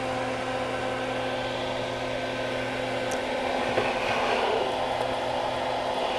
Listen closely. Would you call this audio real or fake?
real